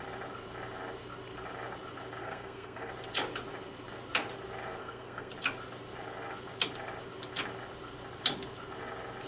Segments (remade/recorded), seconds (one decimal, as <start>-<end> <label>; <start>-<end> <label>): 0.0-2.2 recorded; 2.2-2.9 remade; 2.9-4.8 recorded; 4.8-5.3 remade; 5.3-9.3 recorded

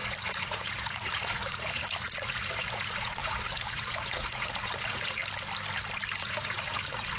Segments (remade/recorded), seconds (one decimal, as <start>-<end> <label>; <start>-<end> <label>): 0.0-5.2 remade; 5.2-6.2 recorded; 6.2-7.2 remade